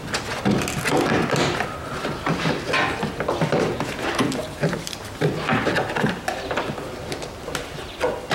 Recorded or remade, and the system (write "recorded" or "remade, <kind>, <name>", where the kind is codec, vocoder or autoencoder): recorded